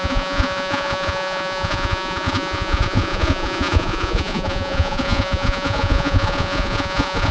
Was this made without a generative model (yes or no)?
no